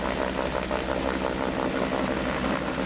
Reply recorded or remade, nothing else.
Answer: recorded